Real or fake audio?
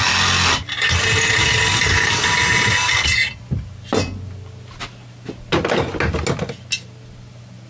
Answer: real